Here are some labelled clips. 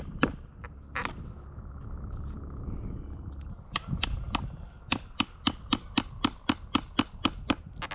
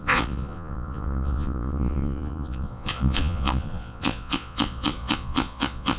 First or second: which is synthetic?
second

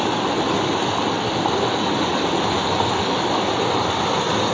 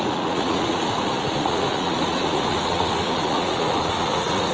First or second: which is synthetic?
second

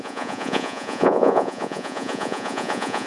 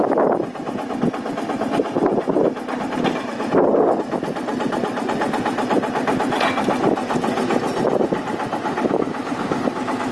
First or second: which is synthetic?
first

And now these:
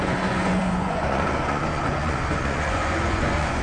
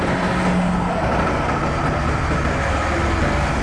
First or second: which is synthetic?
first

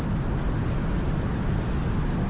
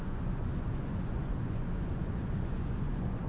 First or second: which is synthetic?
second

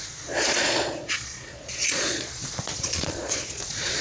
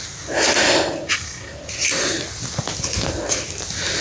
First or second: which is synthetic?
first